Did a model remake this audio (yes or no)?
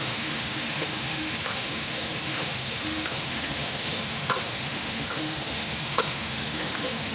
yes